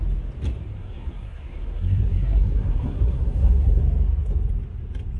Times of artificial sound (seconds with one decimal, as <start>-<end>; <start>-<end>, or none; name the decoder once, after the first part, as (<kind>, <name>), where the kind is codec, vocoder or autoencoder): 0.7-3.8 (codec, SNAC)